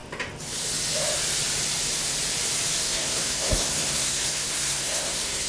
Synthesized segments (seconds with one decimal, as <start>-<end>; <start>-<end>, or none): 2.8-5.5